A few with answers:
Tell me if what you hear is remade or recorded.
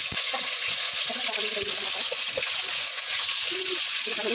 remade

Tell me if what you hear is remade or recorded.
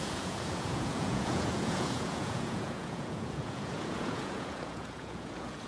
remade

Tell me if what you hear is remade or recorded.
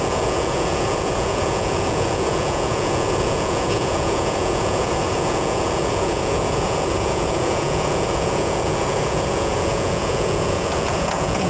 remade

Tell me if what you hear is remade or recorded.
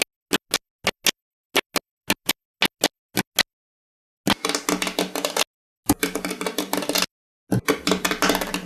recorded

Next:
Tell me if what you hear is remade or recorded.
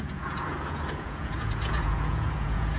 remade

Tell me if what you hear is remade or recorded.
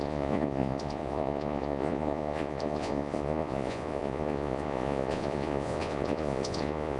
remade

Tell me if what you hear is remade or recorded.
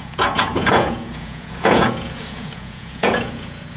remade